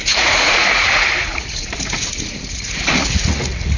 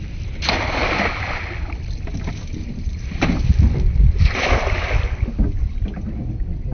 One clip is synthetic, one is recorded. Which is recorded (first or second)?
second